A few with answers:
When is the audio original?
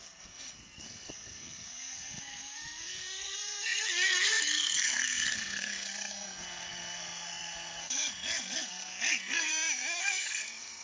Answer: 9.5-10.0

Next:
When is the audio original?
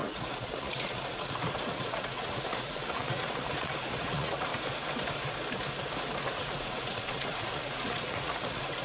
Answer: 4.5-6.4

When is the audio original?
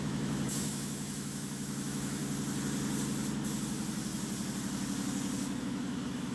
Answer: 2.2-5.6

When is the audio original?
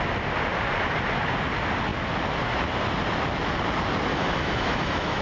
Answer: 0.0-4.1